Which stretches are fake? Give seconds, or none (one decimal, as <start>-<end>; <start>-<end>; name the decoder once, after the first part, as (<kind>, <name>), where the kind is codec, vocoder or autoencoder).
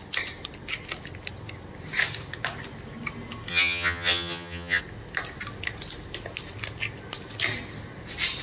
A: 3.5-4.8 (vocoder, HiFi-GAN)